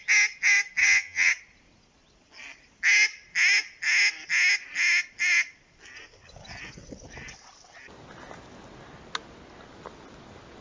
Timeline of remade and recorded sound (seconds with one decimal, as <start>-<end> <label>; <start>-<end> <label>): 0.0-0.8 recorded; 0.8-1.3 remade; 1.3-10.6 recorded